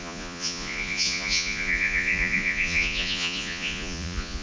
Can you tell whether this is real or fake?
fake